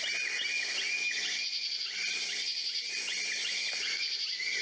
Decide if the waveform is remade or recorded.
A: recorded